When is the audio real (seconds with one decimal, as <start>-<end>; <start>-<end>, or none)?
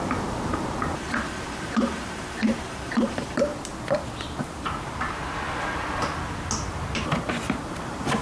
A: 3.5-4.4; 5.2-6.7